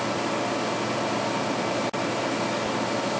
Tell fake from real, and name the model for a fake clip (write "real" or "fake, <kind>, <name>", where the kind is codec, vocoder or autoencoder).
real